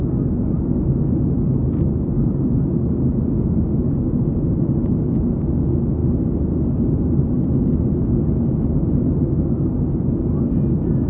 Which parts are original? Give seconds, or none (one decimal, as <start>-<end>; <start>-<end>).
0.0-11.1